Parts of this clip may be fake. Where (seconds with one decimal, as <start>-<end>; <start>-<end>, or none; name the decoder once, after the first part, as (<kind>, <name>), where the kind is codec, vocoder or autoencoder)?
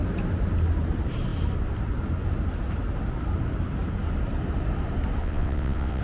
5.2-6.0 (vocoder, WaveNeXt)